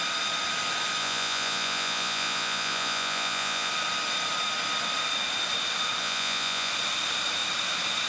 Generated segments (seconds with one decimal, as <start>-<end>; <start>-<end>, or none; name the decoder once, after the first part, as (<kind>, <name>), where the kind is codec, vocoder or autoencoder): 1.0-3.7 (vocoder, Vocos); 6.0-6.7